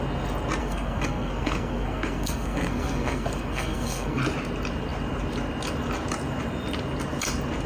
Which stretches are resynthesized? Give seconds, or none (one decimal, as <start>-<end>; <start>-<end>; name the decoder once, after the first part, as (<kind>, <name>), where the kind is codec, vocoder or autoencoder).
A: 0.6-4.2 (codec, SNAC)